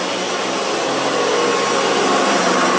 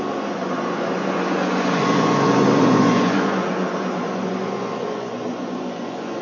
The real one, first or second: first